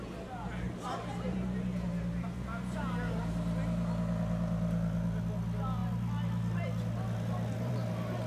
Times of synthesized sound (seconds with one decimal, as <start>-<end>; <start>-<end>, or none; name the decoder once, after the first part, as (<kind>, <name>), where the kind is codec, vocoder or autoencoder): none